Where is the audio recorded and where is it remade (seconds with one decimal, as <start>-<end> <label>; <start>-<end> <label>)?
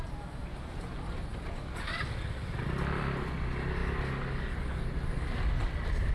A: 0.0-6.1 recorded